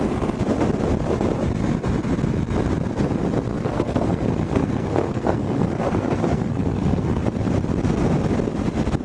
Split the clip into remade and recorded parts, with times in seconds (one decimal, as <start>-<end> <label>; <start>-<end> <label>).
0.0-3.5 recorded; 3.5-7.5 remade; 7.5-9.0 recorded